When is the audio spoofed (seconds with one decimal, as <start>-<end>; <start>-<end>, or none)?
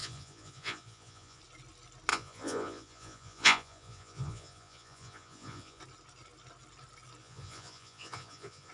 0.0-1.4; 2.1-5.8; 7.2-8.7